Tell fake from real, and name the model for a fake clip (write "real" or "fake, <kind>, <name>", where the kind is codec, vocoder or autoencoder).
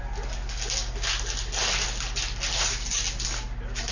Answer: real